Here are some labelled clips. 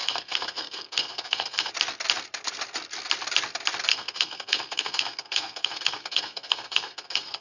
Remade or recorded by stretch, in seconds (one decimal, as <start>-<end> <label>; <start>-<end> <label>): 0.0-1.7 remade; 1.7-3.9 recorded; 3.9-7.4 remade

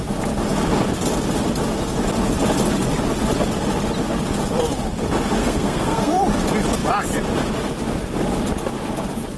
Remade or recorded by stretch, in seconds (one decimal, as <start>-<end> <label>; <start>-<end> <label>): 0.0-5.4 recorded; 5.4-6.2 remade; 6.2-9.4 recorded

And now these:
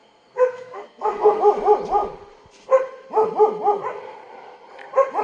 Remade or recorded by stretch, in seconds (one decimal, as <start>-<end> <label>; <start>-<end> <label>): 0.0-1.4 remade; 1.4-5.2 recorded

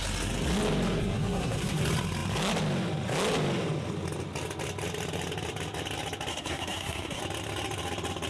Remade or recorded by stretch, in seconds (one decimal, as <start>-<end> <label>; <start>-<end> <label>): 0.0-1.0 recorded; 1.0-1.8 remade; 1.8-6.3 recorded; 6.3-7.2 remade; 7.2-8.3 recorded